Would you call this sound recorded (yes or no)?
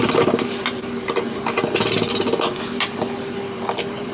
yes